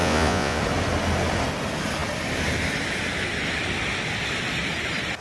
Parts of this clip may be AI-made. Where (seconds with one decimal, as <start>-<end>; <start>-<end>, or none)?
0.0-0.6